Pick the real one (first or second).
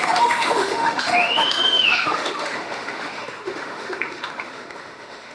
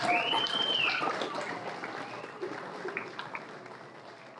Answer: second